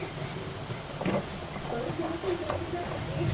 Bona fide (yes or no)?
yes